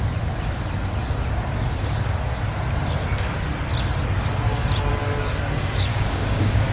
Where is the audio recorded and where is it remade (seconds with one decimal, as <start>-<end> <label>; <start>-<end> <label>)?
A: 0.0-5.9 recorded; 5.9-6.7 remade